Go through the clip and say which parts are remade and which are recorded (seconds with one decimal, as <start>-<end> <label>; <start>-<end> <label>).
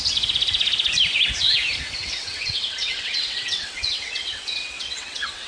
0.0-2.0 recorded; 2.0-5.5 remade